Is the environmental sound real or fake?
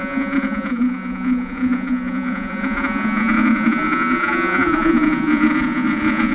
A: fake